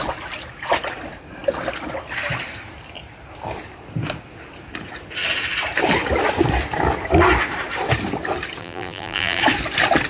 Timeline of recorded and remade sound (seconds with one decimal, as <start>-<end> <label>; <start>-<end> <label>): 0.0-8.6 recorded; 8.6-9.4 remade; 9.4-10.1 recorded